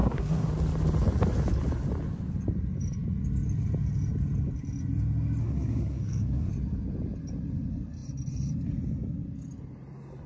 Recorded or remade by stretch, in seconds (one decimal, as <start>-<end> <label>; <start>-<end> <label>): 0.0-0.5 remade; 0.5-5.4 recorded; 5.4-6.5 remade; 6.5-10.3 recorded